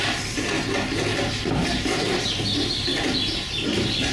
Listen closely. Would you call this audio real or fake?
real